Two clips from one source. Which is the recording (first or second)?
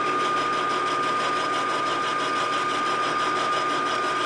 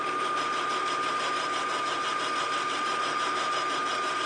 first